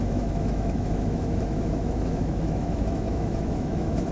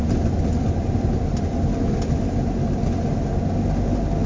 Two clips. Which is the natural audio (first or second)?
second